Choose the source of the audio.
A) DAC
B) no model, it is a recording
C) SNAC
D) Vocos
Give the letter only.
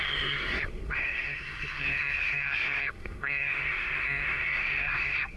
C